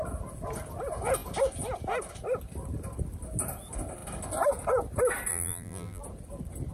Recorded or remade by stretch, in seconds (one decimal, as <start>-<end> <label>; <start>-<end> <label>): 0.0-5.3 recorded; 5.3-6.0 remade; 6.0-6.7 recorded